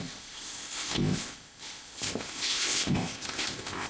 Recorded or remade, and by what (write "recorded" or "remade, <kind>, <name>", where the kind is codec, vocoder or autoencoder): remade, codec, ZipCodec